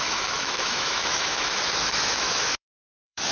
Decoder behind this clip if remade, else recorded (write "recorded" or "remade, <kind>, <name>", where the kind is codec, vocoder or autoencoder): remade, autoencoder, DAC-VAE